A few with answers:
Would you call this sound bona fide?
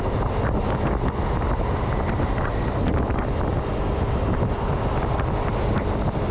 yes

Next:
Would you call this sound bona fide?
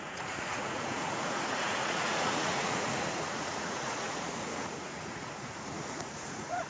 no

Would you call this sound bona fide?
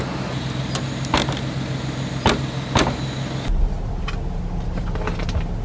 yes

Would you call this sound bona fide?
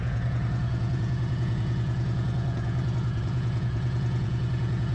no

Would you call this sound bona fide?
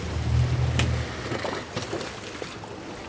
yes